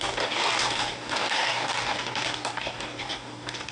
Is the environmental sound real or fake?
fake